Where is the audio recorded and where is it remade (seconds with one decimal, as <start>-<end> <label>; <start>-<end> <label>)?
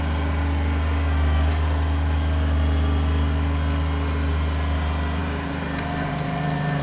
0.0-5.2 recorded; 5.2-6.8 remade